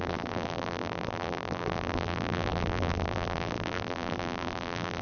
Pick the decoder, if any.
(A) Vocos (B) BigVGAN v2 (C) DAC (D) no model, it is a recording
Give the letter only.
B